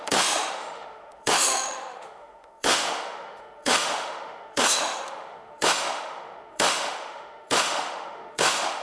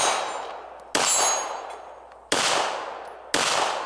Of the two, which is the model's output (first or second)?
first